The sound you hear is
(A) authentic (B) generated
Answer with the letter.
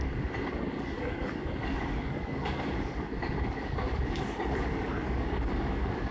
B